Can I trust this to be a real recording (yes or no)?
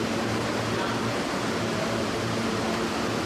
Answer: no